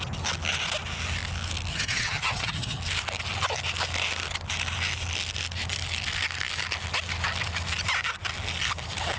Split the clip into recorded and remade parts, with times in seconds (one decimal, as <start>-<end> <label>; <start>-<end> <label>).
0.0-1.7 recorded; 1.7-2.8 remade; 2.8-9.2 recorded